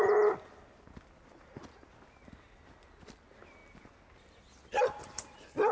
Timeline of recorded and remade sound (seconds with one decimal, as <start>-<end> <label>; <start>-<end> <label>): 0.0-5.7 recorded